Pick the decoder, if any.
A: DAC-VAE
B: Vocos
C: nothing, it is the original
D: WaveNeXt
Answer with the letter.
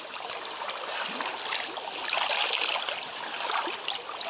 C